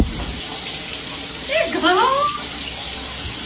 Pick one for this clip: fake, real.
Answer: real